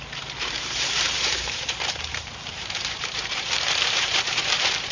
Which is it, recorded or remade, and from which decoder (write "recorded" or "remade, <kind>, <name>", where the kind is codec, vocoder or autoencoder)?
remade, vocoder, BigVGAN v2